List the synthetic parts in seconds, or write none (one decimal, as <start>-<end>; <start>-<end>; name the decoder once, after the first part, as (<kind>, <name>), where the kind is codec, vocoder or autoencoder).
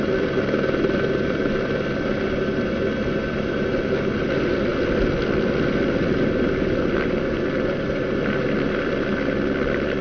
none